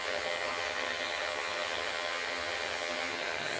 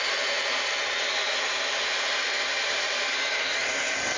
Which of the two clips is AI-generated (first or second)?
first